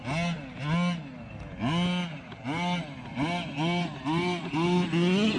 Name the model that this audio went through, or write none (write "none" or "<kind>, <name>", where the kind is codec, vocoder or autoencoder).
none